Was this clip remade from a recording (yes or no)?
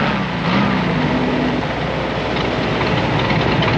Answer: no